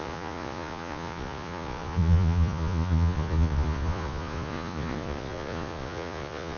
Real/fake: fake